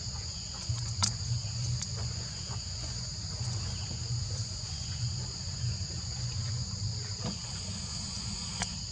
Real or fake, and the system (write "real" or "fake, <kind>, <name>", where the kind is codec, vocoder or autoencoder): fake, vocoder, Vocos